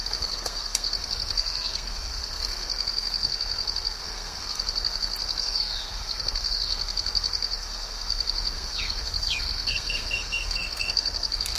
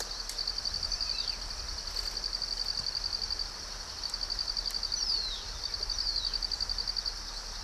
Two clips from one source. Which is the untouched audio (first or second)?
second